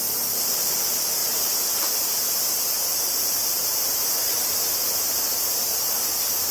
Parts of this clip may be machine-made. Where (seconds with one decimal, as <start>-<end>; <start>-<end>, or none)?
1.2-4.7